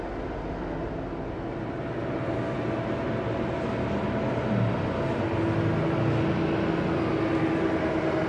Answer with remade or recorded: recorded